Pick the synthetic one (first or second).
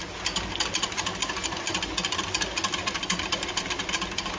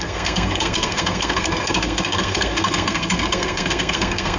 second